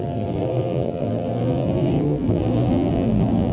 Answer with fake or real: fake